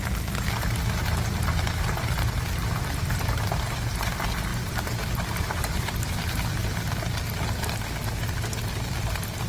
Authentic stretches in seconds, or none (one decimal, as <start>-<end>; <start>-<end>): 0.0-2.6; 4.1-4.5; 6.2-9.5